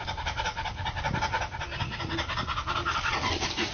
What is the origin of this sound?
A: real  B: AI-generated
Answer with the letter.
A